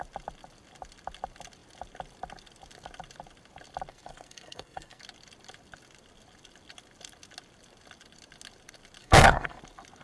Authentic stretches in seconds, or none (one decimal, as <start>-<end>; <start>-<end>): 0.0-3.9; 5.0-9.0; 9.6-10.0